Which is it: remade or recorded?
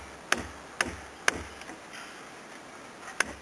recorded